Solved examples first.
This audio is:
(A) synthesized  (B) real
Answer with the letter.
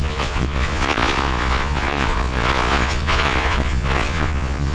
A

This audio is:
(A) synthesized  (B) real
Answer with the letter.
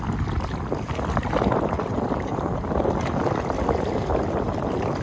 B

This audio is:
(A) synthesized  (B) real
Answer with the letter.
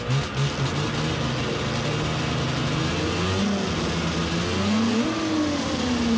B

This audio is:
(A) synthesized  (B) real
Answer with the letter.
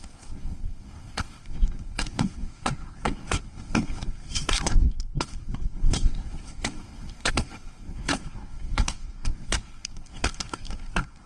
A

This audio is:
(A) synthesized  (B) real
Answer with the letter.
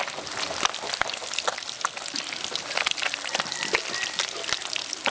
B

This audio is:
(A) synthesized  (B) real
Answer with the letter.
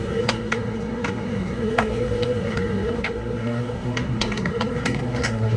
A